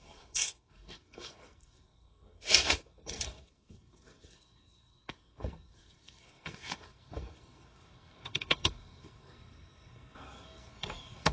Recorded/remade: remade